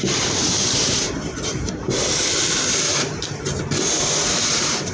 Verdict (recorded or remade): remade